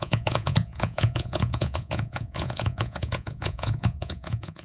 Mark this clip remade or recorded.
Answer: remade